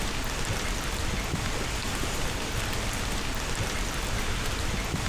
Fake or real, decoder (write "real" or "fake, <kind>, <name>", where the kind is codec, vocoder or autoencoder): real